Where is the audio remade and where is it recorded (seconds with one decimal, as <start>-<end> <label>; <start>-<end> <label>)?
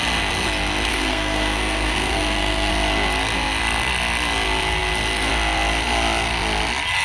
0.0-0.9 recorded; 0.9-2.7 remade; 2.7-7.0 recorded